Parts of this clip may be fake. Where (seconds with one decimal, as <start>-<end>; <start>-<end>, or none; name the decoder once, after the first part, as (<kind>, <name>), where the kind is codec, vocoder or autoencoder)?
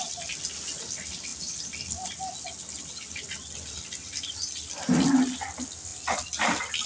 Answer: none